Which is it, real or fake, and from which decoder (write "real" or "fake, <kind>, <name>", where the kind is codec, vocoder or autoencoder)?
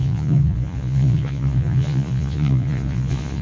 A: fake, vocoder, Vocos